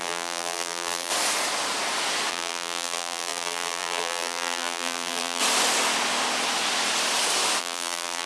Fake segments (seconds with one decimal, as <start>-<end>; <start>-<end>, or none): 0.0-1.1; 2.3-5.4; 7.6-8.3